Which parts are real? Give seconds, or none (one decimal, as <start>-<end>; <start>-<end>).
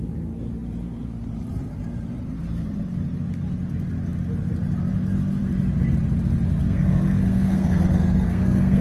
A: 0.0-6.6